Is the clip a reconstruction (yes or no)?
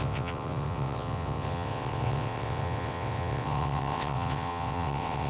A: yes